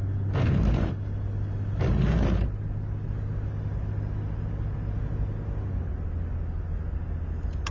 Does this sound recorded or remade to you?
recorded